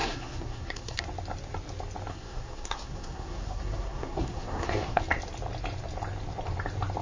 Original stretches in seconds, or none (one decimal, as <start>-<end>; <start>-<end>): 1.0-2.1; 5.0-7.0